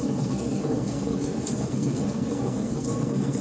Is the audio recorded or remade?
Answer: remade